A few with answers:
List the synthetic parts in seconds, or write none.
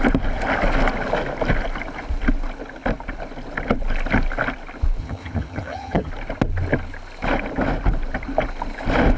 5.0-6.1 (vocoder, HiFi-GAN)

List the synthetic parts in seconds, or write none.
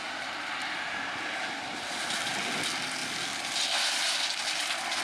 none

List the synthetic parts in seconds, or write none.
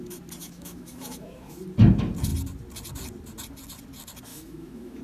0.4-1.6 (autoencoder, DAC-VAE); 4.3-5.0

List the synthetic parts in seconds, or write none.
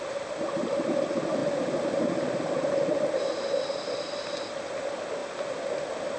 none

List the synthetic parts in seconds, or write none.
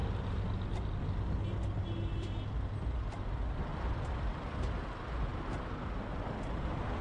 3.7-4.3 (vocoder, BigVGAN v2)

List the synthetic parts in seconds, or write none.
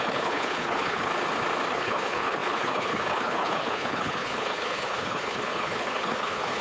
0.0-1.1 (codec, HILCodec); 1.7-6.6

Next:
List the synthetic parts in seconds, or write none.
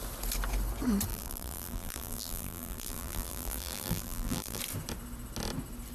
1.1-4.6 (vocoder, BigVGAN v2)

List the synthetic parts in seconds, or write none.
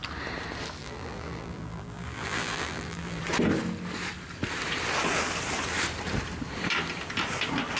0.8-3.2 (vocoder, BigVGAN v2)